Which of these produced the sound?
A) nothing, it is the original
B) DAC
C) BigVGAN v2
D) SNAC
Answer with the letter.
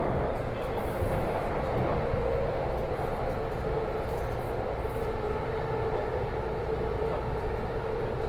A